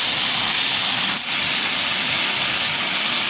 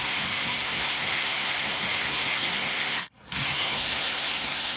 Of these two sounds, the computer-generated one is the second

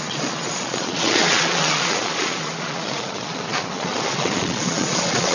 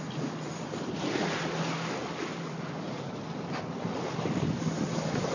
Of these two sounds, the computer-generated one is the first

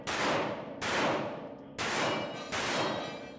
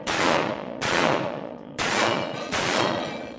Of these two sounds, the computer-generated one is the second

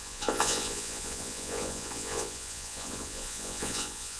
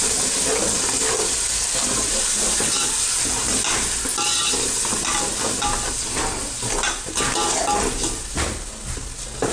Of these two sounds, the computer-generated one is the first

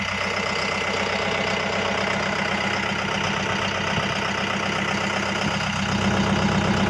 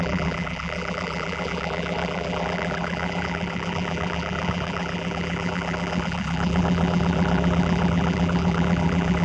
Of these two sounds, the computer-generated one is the second